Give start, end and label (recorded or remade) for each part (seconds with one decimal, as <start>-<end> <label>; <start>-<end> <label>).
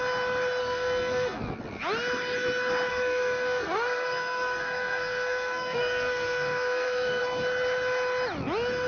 0.0-0.6 recorded; 0.6-1.4 remade; 1.4-2.9 recorded; 2.9-7.2 remade; 7.2-8.9 recorded